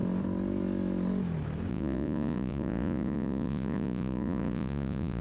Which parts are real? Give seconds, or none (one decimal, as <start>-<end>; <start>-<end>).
0.0-1.7

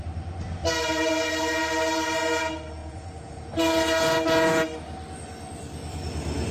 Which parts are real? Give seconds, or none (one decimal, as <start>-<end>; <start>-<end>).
0.0-2.8; 3.5-6.5